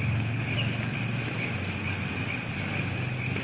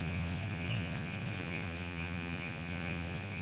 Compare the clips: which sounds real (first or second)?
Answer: first